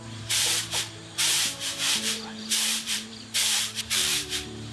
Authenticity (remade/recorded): remade